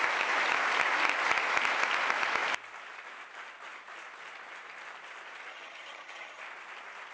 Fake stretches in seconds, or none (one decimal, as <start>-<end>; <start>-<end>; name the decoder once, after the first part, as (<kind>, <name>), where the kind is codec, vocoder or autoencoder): 5.5-6.4 (vocoder, HiFi-GAN)